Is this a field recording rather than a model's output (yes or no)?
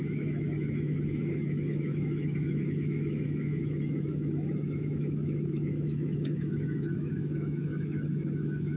no